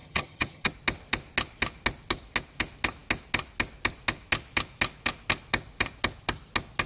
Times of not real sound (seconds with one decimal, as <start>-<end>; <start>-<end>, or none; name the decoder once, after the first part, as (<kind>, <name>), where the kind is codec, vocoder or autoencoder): 0.0-0.7 (vocoder, HiFi-GAN)